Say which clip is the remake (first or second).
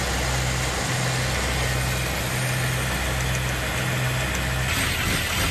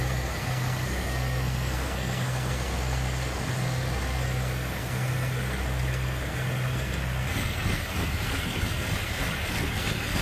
second